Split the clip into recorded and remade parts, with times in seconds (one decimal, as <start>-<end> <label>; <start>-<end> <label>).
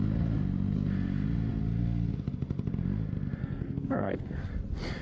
0.0-3.4 recorded; 3.4-4.5 remade; 4.5-5.0 recorded